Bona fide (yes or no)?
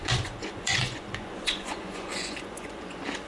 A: no